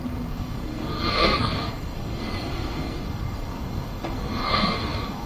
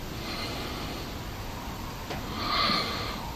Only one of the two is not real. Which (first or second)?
first